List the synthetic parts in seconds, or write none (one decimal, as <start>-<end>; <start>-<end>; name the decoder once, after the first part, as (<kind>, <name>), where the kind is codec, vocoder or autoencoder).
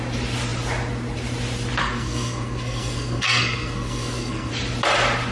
1.8-4.5 (codec, SNAC)